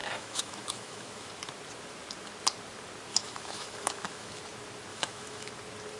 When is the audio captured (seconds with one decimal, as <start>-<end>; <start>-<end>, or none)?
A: 1.3-3.1; 4.4-4.9; 5.5-6.0